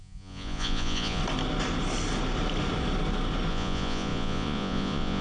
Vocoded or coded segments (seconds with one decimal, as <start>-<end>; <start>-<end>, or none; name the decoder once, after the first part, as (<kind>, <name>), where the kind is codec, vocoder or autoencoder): 0.0-1.2 (vocoder, Vocos); 3.5-5.2